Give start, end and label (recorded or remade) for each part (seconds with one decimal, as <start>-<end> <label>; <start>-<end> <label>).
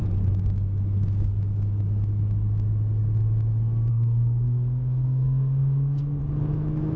0.0-3.9 recorded; 3.9-6.2 remade; 6.2-7.0 recorded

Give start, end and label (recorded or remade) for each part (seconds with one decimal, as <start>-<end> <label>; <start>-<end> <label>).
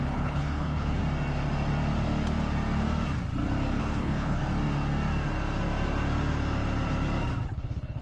0.0-1.0 remade; 1.0-3.8 recorded; 3.8-4.4 remade; 4.4-7.5 recorded; 7.5-8.0 remade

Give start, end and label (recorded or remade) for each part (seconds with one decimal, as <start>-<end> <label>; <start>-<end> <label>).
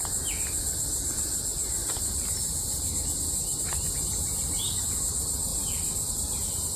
0.0-1.8 recorded; 1.8-4.9 remade; 4.9-5.5 recorded; 5.5-6.1 remade; 6.1-6.8 recorded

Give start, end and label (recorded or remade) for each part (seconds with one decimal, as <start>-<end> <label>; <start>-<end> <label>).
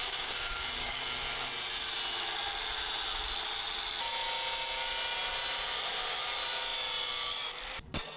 0.0-1.0 remade; 1.0-8.2 recorded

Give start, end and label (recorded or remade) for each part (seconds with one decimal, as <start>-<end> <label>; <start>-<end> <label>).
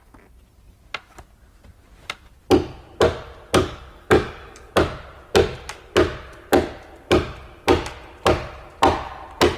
0.0-3.6 recorded; 3.6-4.7 remade; 4.7-9.6 recorded